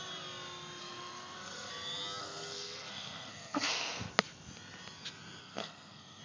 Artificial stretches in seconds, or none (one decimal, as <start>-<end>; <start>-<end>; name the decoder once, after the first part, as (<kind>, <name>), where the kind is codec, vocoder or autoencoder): 0.8-1.7 (codec, SNAC); 2.2-4.1; 5.4-6.2